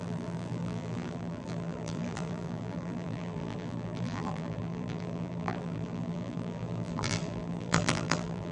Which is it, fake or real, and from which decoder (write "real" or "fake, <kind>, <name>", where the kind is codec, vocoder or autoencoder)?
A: fake, vocoder, BigVGAN v2